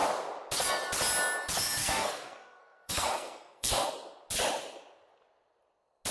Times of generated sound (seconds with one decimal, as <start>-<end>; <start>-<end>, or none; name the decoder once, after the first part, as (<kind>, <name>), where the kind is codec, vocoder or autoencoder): 1.8-3.9 (codec, SNAC)